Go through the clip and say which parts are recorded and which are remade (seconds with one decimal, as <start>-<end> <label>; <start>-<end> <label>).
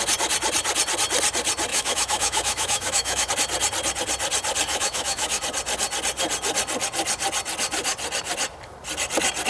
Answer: 0.0-1.7 recorded; 1.7-3.3 remade; 3.3-4.7 recorded; 4.7-5.4 remade; 5.4-9.5 recorded